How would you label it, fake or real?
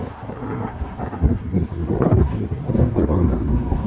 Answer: fake